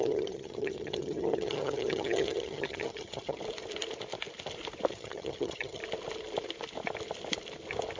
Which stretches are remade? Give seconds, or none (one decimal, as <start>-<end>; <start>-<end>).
0.0-3.4; 4.9-5.8